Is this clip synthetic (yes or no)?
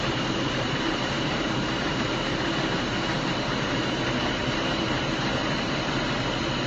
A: yes